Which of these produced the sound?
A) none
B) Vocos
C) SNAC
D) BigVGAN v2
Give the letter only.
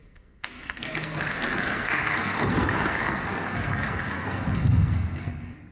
C